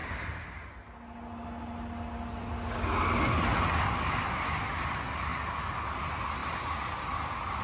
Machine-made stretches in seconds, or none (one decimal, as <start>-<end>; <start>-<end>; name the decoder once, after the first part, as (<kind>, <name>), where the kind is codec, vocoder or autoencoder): none